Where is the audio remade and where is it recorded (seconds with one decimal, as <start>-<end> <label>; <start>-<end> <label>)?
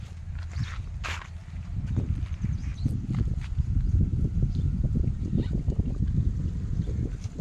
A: 0.0-7.4 recorded